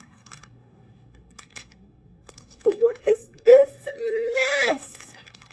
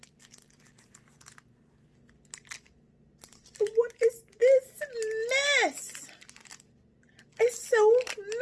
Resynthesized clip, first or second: first